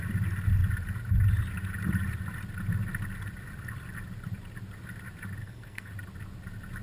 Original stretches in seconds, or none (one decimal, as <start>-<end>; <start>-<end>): 0.0-5.4; 5.9-6.8